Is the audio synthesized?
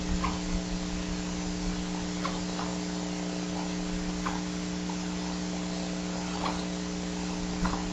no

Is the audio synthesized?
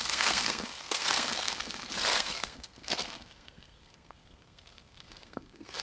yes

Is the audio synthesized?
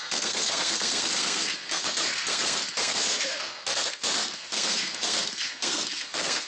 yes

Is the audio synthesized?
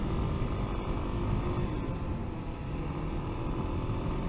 no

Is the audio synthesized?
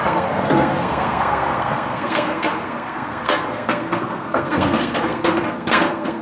yes